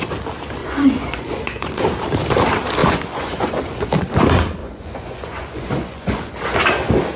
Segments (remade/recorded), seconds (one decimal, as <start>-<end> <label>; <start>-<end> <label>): 0.0-0.6 recorded; 0.6-1.8 remade; 1.8-2.8 recorded; 2.8-3.9 remade; 3.9-4.6 recorded; 4.6-6.3 remade; 6.3-7.2 recorded